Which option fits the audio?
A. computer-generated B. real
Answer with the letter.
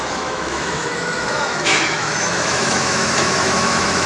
A